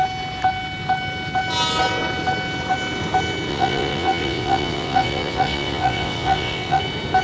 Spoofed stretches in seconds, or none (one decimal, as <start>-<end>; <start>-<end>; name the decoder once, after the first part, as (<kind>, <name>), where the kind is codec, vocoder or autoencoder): 3.5-6.8 (vocoder, WaveNeXt)